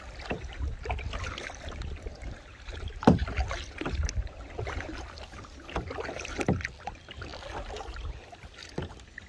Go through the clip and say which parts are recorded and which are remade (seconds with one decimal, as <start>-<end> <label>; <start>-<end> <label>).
0.0-2.1 recorded; 2.1-5.2 remade; 5.2-9.3 recorded

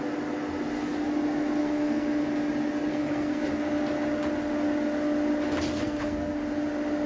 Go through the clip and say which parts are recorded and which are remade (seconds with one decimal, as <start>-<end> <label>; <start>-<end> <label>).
0.0-1.6 recorded; 1.6-2.2 remade; 2.2-2.9 recorded; 2.9-3.5 remade; 3.5-5.7 recorded; 5.7-6.4 remade; 6.4-7.1 recorded

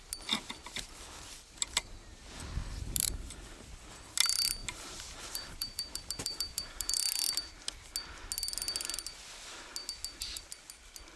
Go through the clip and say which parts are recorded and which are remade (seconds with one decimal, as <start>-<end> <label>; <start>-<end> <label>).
0.0-2.6 recorded; 2.6-3.7 remade; 3.7-4.6 recorded; 4.6-7.0 remade; 7.0-11.2 recorded

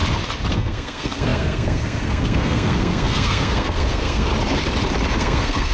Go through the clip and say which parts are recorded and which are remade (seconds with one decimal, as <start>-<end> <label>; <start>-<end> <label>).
0.0-0.5 recorded; 0.5-4.3 remade; 4.3-5.1 recorded; 5.1-5.7 remade

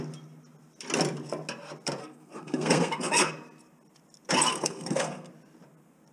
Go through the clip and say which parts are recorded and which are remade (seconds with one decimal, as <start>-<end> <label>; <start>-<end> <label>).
0.0-2.0 recorded; 2.0-3.3 remade; 3.3-4.5 recorded; 4.5-5.3 remade; 5.3-6.1 recorded

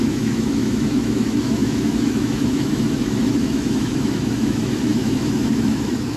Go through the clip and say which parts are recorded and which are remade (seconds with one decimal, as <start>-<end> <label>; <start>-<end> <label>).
0.0-6.2 remade

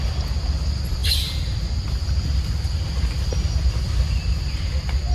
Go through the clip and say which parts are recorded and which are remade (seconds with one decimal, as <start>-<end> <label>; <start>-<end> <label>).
0.0-5.1 recorded

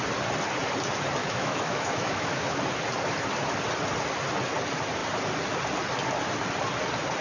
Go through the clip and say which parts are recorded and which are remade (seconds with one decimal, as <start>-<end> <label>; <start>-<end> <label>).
0.0-1.2 recorded; 1.2-2.6 remade; 2.6-7.2 recorded